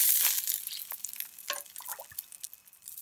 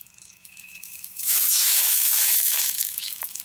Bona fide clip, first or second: first